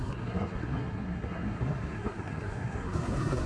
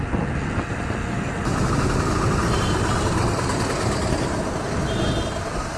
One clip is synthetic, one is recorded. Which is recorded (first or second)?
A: second